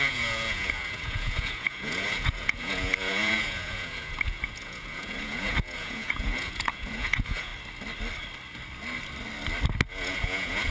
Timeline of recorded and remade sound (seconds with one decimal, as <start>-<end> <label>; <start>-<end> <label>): 0.0-7.5 remade; 7.5-9.9 recorded; 9.9-10.7 remade